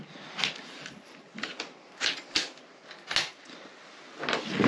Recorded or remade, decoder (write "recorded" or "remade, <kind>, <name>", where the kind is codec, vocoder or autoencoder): recorded